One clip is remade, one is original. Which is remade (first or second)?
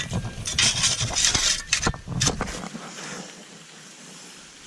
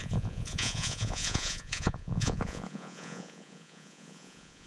second